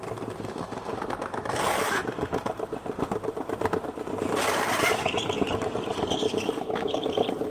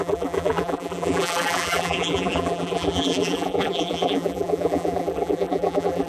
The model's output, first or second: second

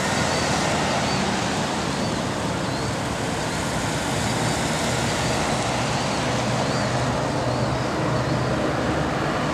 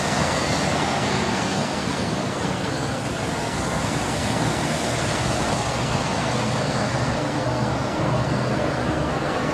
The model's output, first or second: second